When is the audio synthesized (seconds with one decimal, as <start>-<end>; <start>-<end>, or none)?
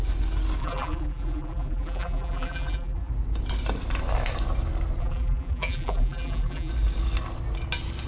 0.6-3.1; 5.0-6.7